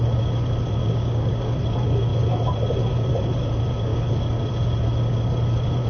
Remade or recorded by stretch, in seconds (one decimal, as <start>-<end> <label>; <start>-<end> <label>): 0.0-0.8 recorded; 0.8-1.5 remade; 1.5-5.9 recorded

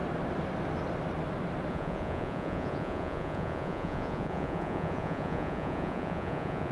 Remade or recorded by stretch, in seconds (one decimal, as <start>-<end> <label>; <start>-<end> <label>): 0.0-1.7 recorded; 1.7-6.7 remade

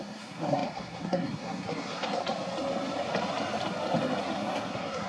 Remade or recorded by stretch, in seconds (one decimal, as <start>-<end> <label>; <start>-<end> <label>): 0.0-2.2 remade; 2.2-4.2 recorded; 4.2-5.1 remade

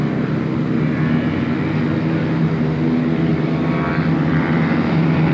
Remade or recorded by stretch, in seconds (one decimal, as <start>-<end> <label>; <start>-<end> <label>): 0.0-5.3 recorded

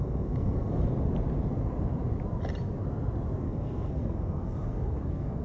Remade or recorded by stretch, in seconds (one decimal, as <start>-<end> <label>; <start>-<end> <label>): 0.0-0.9 remade; 0.9-3.4 recorded; 3.4-5.4 remade